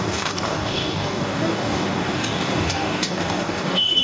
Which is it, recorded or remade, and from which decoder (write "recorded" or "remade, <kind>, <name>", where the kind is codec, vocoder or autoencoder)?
remade, codec, DAC